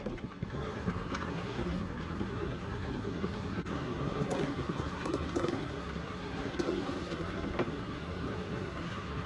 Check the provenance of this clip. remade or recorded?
remade